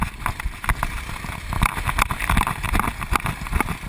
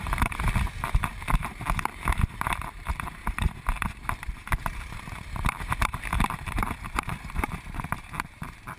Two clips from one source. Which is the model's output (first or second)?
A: second